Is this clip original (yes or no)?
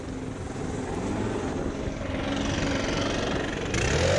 yes